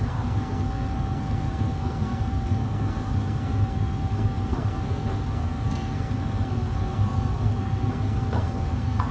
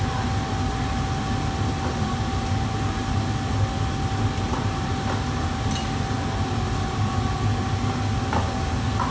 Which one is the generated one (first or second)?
first